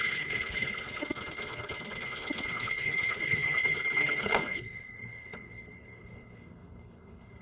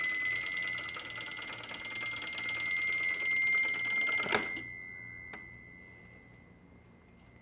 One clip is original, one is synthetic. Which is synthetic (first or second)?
first